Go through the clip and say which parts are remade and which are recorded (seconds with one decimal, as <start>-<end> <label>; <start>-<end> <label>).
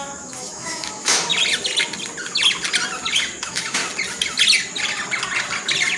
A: 0.0-1.3 remade; 1.3-3.4 recorded; 3.4-3.8 remade; 3.8-6.0 recorded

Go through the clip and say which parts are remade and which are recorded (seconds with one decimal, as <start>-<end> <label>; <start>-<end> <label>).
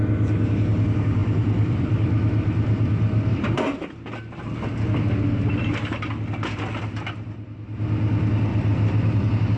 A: 0.0-1.2 recorded; 1.2-2.9 remade; 2.9-3.3 recorded; 3.3-4.7 remade; 4.7-5.6 recorded; 5.6-6.7 remade; 6.7-8.5 recorded; 8.5-9.6 remade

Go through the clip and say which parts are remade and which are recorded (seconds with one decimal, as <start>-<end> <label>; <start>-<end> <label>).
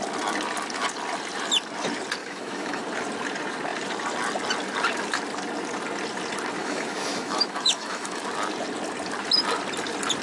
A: 0.0-2.2 recorded; 2.2-2.8 remade; 2.8-6.6 recorded; 6.6-8.2 remade; 8.2-10.2 recorded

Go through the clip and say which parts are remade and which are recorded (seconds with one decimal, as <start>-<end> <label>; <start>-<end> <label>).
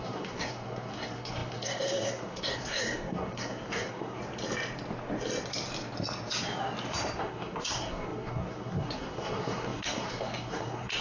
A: 0.0-4.2 remade; 4.2-7.2 recorded; 7.2-11.0 remade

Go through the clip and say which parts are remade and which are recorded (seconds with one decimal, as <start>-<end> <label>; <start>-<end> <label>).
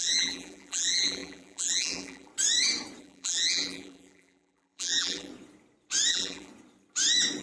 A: 0.0-2.3 remade; 2.3-3.0 recorded; 3.0-5.3 remade; 5.3-6.1 recorded; 6.1-6.5 remade; 6.5-7.4 recorded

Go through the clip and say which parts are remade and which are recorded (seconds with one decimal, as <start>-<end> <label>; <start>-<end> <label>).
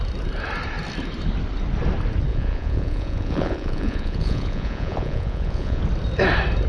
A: 0.0-2.3 recorded; 2.3-5.8 remade; 5.8-6.7 recorded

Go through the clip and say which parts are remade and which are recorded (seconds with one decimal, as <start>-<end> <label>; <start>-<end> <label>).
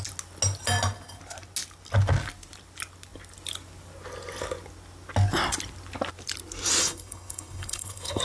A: 0.0-6.8 recorded; 6.8-8.2 remade